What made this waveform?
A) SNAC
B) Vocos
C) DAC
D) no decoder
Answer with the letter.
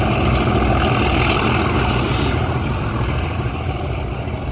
D